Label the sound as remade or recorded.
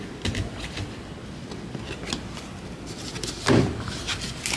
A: recorded